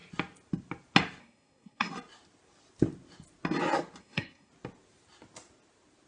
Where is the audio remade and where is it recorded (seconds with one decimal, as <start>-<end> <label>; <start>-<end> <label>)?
0.0-1.2 recorded; 1.2-1.9 remade; 1.9-4.0 recorded; 4.0-4.5 remade; 4.5-6.1 recorded